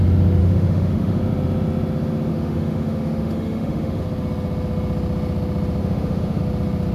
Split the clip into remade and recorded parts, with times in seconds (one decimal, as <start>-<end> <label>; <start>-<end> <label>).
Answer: 0.0-0.4 recorded; 0.4-1.2 remade; 1.2-2.3 recorded; 2.3-4.0 remade; 4.0-5.8 recorded; 5.8-6.4 remade; 6.4-6.9 recorded